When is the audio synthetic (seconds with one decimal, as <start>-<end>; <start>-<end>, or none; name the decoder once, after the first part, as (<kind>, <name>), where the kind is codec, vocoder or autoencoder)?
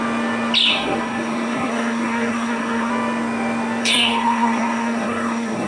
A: 0.7-2.9 (codec, SNAC); 3.8-5.7